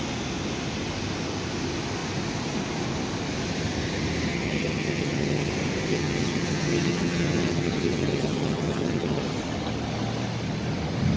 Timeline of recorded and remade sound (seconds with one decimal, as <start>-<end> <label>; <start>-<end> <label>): 0.0-4.3 recorded; 4.3-5.5 remade; 5.5-5.9 recorded; 5.9-9.2 remade; 9.2-11.2 recorded